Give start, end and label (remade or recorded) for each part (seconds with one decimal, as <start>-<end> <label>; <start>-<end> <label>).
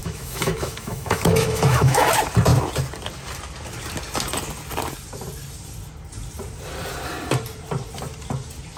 0.0-2.1 remade; 2.1-8.8 recorded